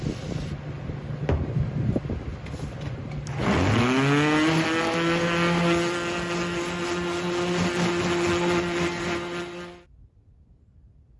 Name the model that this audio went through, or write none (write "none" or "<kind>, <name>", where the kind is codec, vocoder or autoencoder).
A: none